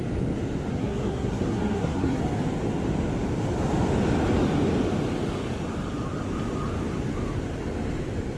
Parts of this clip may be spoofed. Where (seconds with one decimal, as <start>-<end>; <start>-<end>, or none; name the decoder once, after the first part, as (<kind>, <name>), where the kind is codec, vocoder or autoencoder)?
0.7-2.2 (codec, SNAC)